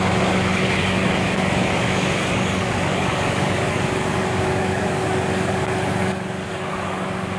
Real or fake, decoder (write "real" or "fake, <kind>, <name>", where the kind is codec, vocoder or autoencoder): fake, codec, DAC